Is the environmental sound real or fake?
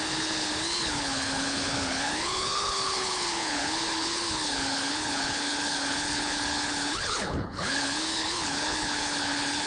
fake